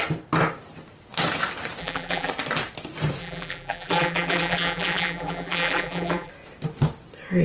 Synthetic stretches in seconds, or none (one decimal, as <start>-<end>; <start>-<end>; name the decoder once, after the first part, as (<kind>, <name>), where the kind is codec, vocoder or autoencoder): 1.8-2.3 (vocoder, BigVGAN v2); 3.2-6.3